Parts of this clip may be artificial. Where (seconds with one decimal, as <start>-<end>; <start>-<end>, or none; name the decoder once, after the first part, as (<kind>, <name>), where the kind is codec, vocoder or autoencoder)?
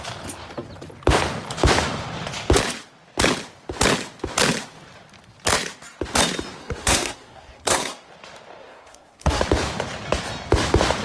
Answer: 6.6-8.1 (codec, SNAC); 8.6-9.4